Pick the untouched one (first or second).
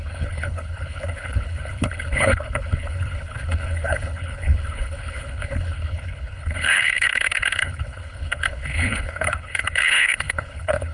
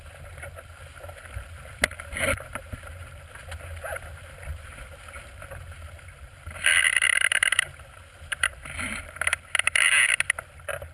second